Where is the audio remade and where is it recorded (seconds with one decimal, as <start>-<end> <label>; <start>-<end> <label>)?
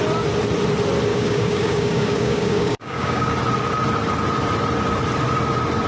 0.0-1.1 recorded; 1.1-3.3 remade; 3.3-5.9 recorded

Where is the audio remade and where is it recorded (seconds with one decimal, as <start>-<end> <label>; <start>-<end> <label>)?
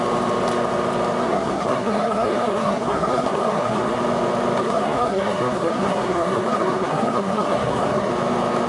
0.0-1.2 recorded; 1.2-4.0 remade; 4.0-4.6 recorded; 4.6-8.1 remade; 8.1-8.7 recorded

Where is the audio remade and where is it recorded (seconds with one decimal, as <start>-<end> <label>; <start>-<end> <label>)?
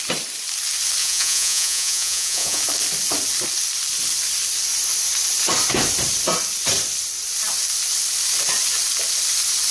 0.0-1.0 recorded; 1.0-2.6 remade; 2.6-9.7 recorded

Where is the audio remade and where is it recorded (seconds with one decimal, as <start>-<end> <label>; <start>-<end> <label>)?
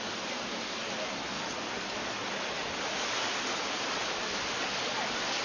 0.0-5.4 recorded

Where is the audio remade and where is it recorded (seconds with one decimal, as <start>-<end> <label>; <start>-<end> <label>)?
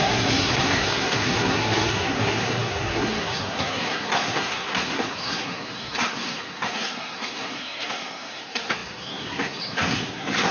0.0-10.5 remade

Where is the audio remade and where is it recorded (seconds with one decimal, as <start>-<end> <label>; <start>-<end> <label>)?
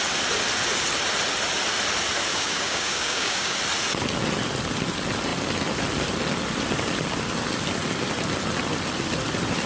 0.0-2.3 recorded; 2.3-3.6 remade; 3.6-9.7 recorded